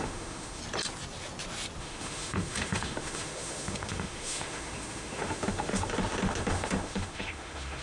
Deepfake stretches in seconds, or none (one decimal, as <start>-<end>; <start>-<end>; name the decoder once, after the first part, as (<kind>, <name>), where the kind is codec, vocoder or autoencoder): 0.0-0.6 (autoencoder, DAC-VAE); 1.8-7.8